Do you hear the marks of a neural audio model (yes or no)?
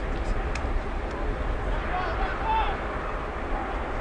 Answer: no